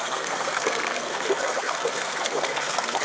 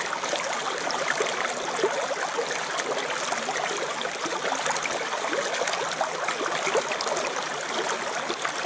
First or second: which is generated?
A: first